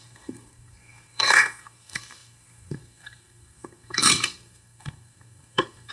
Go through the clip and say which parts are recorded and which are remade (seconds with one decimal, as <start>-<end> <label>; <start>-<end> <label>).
0.0-5.9 remade